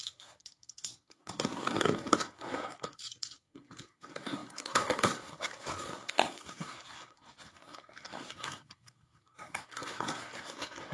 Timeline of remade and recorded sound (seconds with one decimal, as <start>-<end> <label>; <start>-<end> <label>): 0.0-10.9 remade